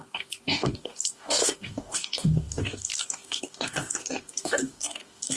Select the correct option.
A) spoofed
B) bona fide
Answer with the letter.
A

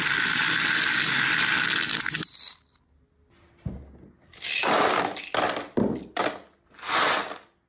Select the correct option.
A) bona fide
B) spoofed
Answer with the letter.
A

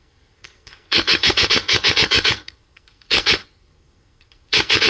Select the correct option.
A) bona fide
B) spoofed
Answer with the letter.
B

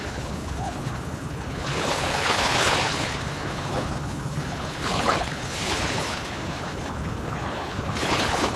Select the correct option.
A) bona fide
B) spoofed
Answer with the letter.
B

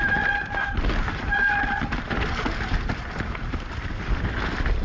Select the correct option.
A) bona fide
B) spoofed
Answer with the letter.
A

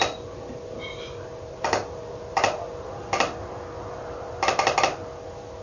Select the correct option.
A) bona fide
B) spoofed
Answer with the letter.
A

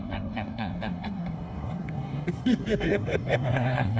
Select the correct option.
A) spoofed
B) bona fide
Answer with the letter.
A